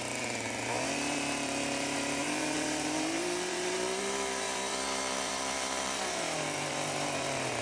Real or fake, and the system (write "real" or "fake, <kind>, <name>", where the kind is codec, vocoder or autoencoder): fake, vocoder, BigVGAN v2